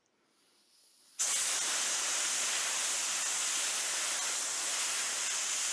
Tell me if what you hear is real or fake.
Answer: real